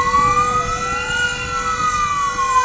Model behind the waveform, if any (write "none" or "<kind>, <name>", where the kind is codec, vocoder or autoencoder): none